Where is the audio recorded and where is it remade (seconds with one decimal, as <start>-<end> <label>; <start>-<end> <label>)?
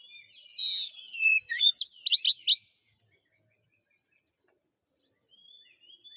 0.0-0.5 recorded; 0.5-1.7 remade; 1.7-6.2 recorded